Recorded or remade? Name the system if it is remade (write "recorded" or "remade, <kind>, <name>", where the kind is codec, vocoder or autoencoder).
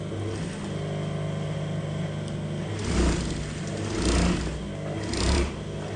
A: recorded